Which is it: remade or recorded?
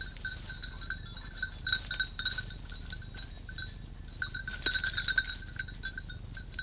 recorded